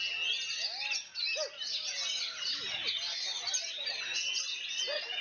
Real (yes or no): yes